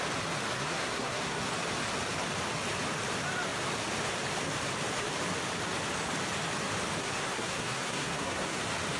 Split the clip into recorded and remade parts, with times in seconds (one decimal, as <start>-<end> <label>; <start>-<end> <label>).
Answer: 0.0-0.5 recorded; 0.5-1.5 remade; 1.5-7.0 recorded; 7.0-8.6 remade; 8.6-9.0 recorded